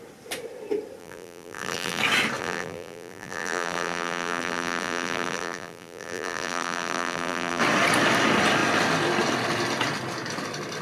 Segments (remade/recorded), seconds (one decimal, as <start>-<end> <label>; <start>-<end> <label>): 0.0-1.0 recorded; 1.0-2.0 remade; 2.0-2.4 recorded; 2.4-7.6 remade; 7.6-10.8 recorded